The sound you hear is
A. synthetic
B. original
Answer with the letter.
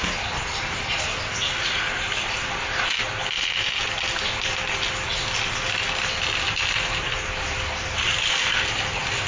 B